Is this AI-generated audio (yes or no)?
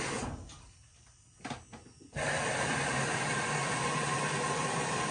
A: yes